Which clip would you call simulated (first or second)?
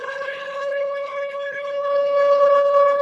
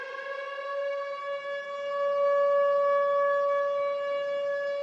first